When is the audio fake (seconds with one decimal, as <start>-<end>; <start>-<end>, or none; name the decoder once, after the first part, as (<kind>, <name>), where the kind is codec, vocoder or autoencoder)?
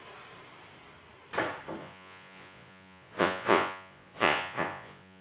1.8-5.2 (vocoder, Vocos)